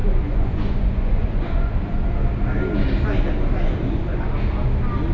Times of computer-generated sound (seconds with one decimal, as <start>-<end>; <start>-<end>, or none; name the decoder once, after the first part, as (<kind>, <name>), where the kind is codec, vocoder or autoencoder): 0.0-2.0 (vocoder, Vocos)